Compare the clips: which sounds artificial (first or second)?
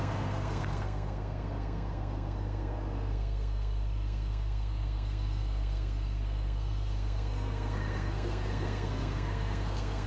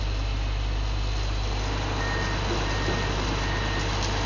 first